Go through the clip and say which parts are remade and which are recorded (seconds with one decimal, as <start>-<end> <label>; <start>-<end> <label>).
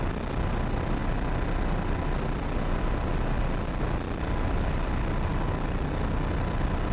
0.0-6.9 recorded